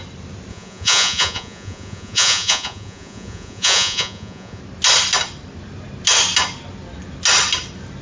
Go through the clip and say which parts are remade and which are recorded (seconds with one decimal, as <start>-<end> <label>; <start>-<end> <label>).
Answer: 0.0-0.5 recorded; 0.5-4.6 remade; 4.6-8.0 recorded